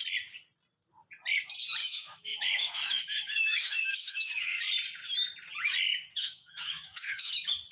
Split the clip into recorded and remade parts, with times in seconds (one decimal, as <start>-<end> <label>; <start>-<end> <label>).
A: 0.0-1.8 recorded; 1.8-4.6 remade; 4.6-5.9 recorded; 5.9-7.3 remade; 7.3-7.7 recorded